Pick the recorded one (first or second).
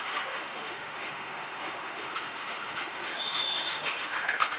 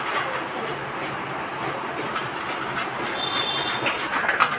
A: second